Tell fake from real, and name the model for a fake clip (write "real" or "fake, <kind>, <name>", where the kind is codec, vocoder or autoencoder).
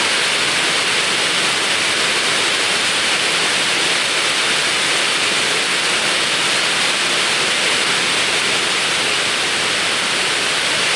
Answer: real